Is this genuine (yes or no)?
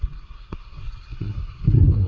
no